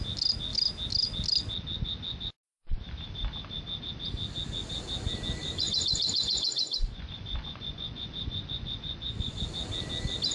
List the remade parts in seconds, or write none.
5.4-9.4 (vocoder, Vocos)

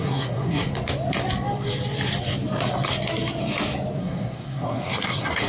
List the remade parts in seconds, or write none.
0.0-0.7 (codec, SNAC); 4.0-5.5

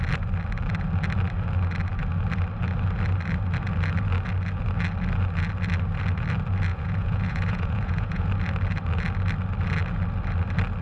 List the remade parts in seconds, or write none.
6.7-8.3 (vocoder, Vocos)

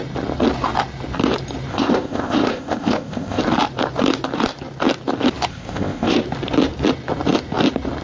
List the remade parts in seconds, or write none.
1.7-3.4 (codec, ZipCodec); 5.5-6.2

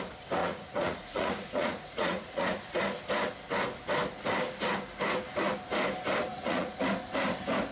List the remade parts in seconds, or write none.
0.4-2.8 (vocoder, Vocos); 6.3-6.8